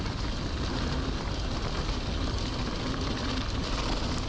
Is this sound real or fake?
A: real